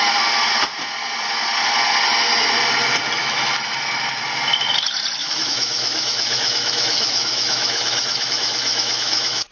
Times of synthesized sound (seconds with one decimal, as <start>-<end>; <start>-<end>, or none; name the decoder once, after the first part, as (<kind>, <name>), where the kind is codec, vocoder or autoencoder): 3.2-4.2 (autoencoder, DAC-VAE); 5.2-9.5